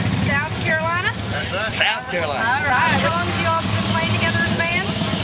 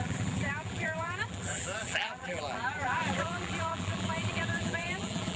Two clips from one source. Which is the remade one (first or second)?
second